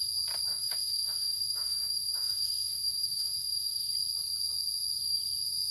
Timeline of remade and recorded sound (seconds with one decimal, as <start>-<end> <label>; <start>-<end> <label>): 0.0-0.5 recorded; 0.5-3.9 remade; 3.9-5.7 recorded